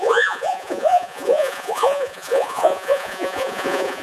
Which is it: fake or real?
fake